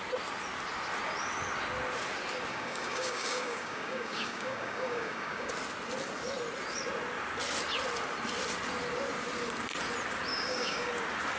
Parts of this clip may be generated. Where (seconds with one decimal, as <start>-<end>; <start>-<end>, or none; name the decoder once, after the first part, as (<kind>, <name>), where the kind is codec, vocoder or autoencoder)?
2.5-5.5 (codec, DAC); 10.3-10.9